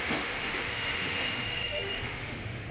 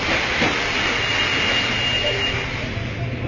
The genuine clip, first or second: second